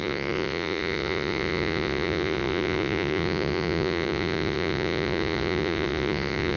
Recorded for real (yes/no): no